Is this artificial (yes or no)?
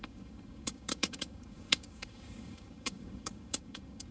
yes